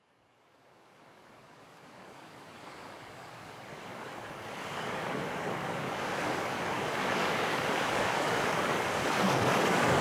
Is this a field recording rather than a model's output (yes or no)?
no